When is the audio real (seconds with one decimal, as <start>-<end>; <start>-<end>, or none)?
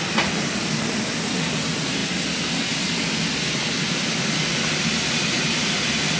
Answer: 0.0-6.2